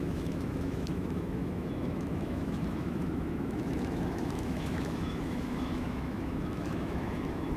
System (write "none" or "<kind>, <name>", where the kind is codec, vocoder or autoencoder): autoencoder, DAC-VAE